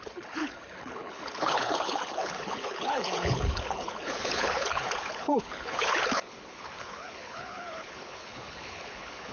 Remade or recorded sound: remade